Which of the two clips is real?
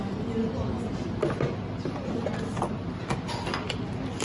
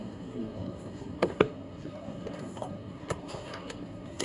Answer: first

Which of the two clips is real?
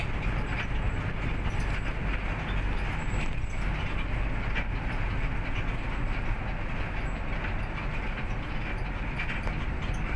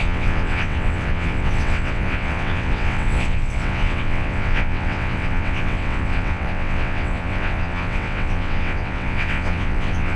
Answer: first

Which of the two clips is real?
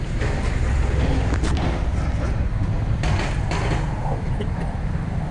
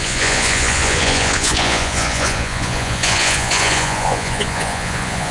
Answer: first